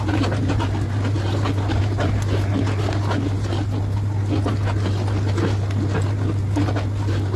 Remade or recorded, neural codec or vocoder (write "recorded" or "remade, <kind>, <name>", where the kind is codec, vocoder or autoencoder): recorded